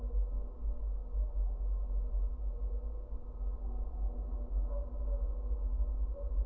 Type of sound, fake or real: real